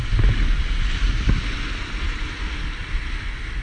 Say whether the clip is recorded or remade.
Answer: recorded